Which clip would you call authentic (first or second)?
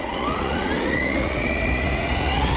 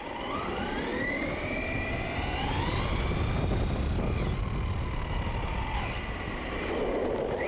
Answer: second